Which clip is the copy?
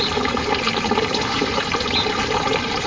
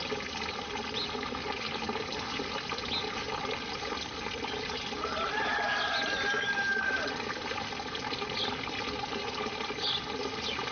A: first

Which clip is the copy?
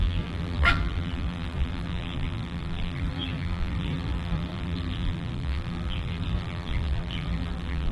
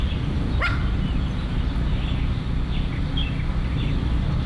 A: first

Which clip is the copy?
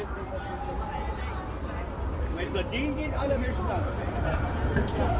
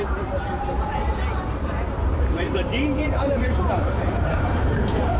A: second